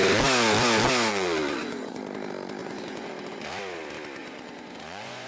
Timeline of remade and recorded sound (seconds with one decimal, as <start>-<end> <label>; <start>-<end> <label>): 0.0-1.1 recorded; 1.1-2.0 remade; 2.0-2.6 recorded; 2.6-3.5 remade; 3.5-4.2 recorded; 4.2-5.3 remade